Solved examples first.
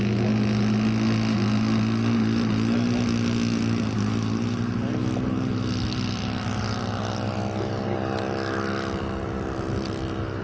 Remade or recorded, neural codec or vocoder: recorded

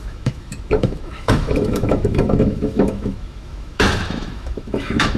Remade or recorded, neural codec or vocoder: remade, autoencoder, DAC-VAE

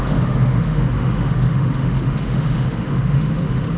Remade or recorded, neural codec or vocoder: remade, autoencoder, DAC-VAE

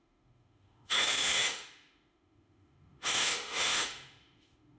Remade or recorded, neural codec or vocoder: remade, autoencoder, DAC-VAE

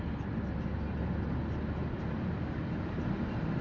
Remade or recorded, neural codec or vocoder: recorded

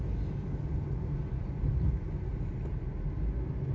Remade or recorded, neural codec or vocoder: recorded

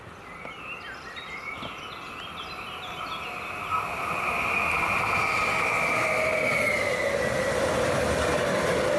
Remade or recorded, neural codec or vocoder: recorded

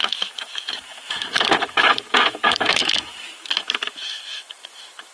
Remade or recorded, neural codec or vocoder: remade, autoencoder, DAC-VAE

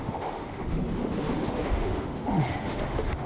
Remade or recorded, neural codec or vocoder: remade, autoencoder, DAC-VAE